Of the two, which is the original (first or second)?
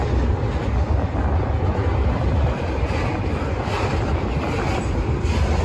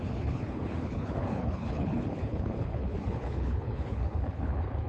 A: first